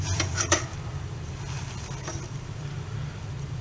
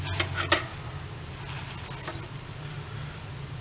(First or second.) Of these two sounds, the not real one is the first